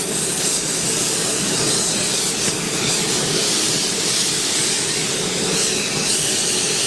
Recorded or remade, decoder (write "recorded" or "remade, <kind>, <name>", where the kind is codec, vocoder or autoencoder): remade, codec, DAC